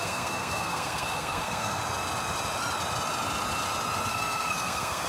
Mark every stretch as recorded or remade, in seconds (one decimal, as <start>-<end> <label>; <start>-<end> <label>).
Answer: 0.0-1.8 remade; 1.8-4.1 recorded; 4.1-5.1 remade

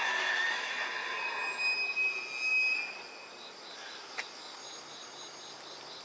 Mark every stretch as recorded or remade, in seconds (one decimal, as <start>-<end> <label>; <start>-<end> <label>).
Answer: 0.0-6.0 recorded

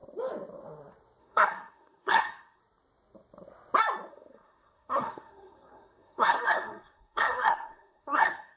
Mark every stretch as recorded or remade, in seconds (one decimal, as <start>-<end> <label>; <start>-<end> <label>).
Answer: 0.0-1.2 recorded; 1.2-2.6 remade; 2.6-4.1 recorded; 4.1-8.6 remade

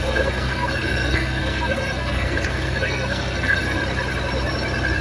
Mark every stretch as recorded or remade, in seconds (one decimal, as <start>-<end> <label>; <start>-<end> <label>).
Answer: 0.0-3.8 remade; 3.8-5.0 recorded

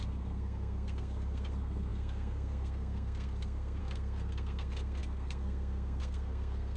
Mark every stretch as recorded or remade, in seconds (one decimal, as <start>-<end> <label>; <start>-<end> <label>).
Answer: 0.0-6.8 remade

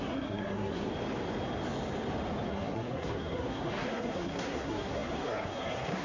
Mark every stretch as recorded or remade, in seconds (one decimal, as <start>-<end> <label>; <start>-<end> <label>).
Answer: 0.0-0.9 remade; 0.9-2.5 recorded; 2.5-6.0 remade

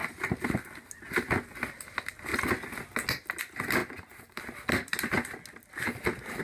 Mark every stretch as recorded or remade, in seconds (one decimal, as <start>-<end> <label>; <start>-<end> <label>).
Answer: 0.0-6.4 recorded

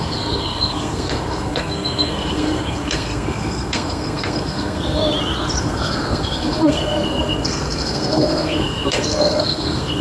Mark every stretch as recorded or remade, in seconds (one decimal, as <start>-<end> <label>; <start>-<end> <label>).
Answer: 0.0-5.0 remade; 5.0-5.6 recorded; 5.6-10.0 remade